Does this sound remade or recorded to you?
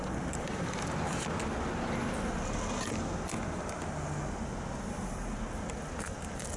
recorded